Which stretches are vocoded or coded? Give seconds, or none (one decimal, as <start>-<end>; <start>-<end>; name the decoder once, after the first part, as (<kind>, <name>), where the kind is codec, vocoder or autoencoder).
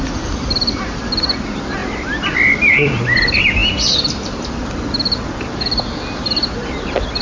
1.8-3.0 (vocoder, BigVGAN v2); 3.6-4.5